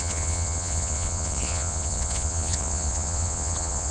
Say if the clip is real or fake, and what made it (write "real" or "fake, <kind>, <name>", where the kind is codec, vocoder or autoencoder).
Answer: fake, vocoder, Vocos